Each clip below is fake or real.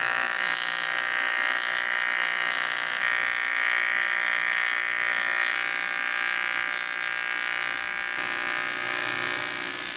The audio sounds fake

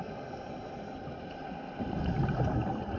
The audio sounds real